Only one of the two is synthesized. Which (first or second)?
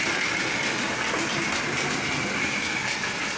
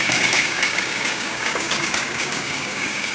second